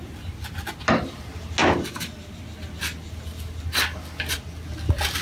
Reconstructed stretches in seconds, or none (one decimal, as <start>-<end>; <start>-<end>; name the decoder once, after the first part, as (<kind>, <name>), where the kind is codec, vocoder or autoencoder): none